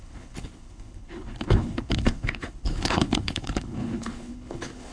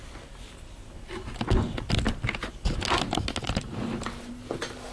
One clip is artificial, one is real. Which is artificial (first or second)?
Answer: first